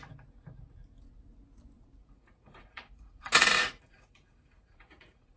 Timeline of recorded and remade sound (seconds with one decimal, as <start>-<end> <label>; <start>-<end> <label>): 0.0-2.0 recorded; 2.0-5.4 remade